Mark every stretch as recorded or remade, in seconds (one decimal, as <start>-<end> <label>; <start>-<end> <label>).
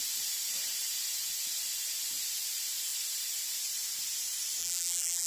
0.0-4.6 recorded; 4.6-5.3 remade